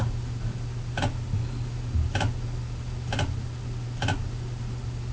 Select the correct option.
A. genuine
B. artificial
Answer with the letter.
A